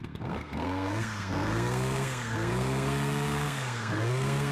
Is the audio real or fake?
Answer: fake